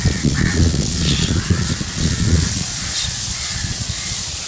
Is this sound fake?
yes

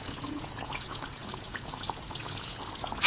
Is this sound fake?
yes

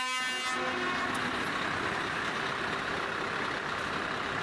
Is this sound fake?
no